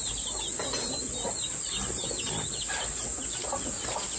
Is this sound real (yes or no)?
yes